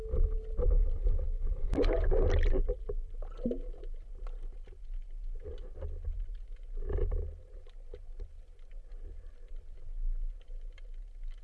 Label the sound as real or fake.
real